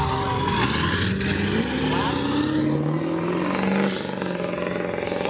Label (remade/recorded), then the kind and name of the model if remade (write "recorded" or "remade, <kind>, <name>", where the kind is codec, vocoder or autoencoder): recorded